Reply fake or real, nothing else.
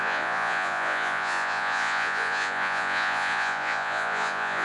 fake